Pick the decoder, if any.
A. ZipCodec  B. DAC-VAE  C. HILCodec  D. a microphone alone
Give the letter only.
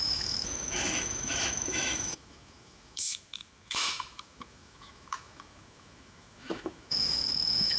B